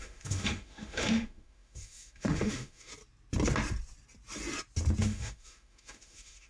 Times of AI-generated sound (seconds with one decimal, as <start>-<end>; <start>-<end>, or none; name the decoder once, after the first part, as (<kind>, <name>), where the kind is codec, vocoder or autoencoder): 0.0-2.9 (autoencoder, DAC-VAE); 5.0-6.5